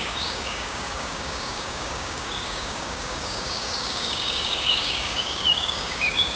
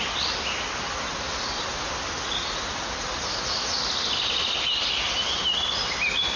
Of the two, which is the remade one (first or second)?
first